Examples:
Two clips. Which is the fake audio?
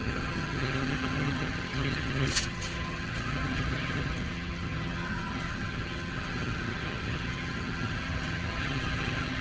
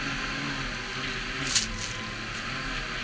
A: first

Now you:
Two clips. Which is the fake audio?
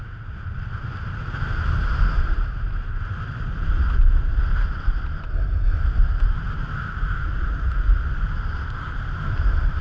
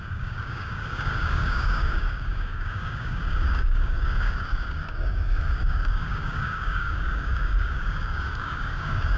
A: second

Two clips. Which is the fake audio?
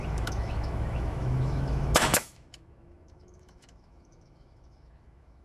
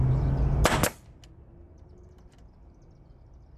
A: first